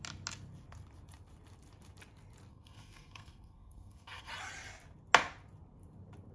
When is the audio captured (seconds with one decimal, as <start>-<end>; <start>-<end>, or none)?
0.0-2.5; 4.3-6.3